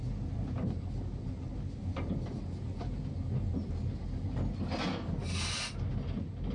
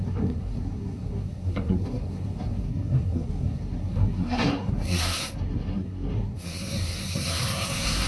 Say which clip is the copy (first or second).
second